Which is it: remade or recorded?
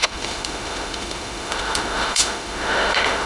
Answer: remade